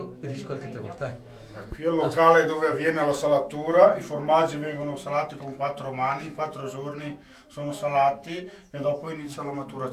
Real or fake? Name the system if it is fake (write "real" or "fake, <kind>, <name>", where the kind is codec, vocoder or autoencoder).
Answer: fake, autoencoder, DAC-VAE